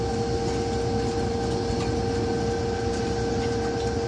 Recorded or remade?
recorded